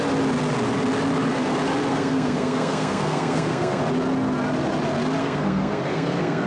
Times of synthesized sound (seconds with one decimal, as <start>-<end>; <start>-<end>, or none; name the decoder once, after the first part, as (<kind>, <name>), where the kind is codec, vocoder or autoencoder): 1.9-3.8 (codec, SNAC); 5.2-6.5